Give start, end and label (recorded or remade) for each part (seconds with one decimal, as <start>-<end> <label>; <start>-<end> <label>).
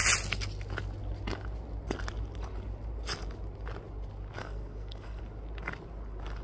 0.0-4.4 recorded; 4.4-5.2 remade; 5.2-6.4 recorded